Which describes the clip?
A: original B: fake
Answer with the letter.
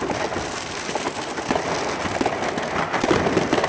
A